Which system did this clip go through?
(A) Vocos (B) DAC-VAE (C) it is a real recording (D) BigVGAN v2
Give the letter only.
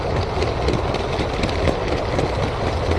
C